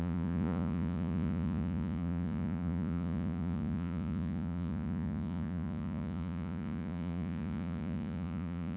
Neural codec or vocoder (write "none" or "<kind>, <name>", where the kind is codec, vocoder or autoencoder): vocoder, Vocos